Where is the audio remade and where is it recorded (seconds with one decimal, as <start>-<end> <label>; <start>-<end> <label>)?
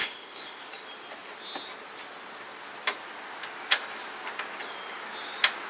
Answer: 0.0-0.6 remade; 0.6-5.7 recorded